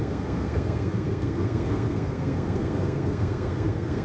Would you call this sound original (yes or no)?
no